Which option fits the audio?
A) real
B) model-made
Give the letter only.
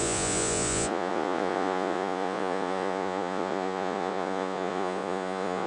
B